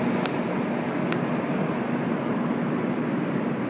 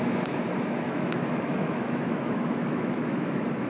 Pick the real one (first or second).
first